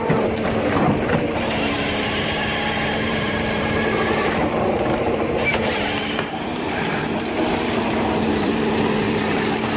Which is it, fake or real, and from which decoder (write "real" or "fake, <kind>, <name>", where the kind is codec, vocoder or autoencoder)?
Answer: fake, vocoder, BigVGAN v2